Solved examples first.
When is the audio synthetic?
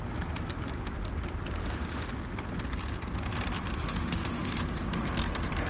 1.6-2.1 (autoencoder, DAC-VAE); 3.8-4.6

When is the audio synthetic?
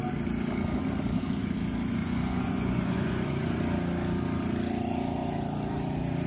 2.0-3.6 (vocoder, Vocos)